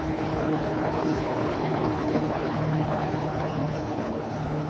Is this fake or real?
fake